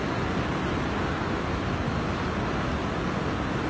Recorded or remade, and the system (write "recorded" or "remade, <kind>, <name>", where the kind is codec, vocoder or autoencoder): recorded